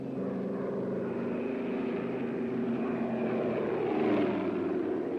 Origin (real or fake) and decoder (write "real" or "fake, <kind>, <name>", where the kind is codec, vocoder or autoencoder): real